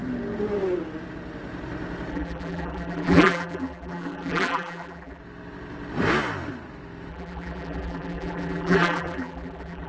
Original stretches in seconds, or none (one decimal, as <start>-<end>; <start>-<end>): 0.0-2.1; 5.2-7.1